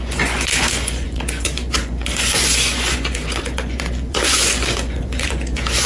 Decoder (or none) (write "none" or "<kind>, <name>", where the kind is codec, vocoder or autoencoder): vocoder, Vocos